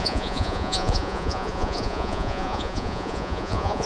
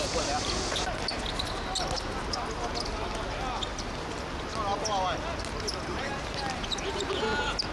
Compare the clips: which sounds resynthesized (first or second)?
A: first